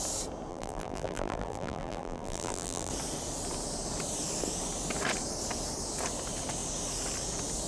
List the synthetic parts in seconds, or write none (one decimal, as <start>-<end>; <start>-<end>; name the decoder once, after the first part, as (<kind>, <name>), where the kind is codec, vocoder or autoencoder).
0.5-2.9 (vocoder, BigVGAN v2)